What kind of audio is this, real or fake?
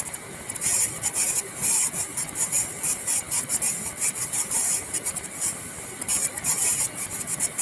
real